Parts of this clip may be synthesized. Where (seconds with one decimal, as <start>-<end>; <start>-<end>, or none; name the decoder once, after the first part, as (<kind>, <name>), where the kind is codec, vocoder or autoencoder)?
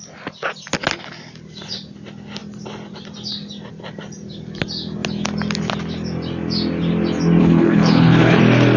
7.4-8.4 (codec, HILCodec)